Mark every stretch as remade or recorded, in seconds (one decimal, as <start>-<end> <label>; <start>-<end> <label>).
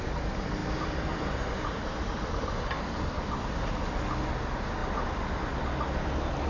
0.0-0.6 recorded; 0.6-4.0 remade; 4.0-6.5 recorded